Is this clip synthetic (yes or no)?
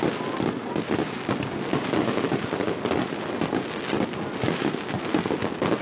no